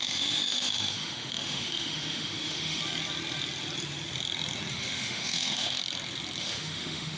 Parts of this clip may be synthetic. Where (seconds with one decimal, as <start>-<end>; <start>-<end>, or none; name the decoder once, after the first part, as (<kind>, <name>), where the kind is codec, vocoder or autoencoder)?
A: 0.0-2.8 (autoencoder, DAC-VAE); 4.7-5.8; 6.4-7.2